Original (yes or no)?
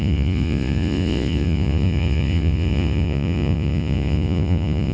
no